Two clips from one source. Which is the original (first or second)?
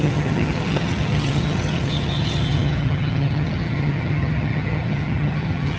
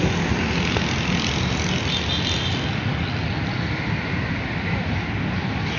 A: second